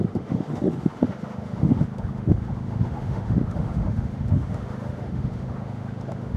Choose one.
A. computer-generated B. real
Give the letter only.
A